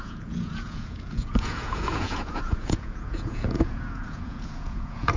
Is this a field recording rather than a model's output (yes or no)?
no